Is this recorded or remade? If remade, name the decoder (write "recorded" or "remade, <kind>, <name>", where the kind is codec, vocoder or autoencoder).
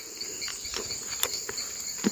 recorded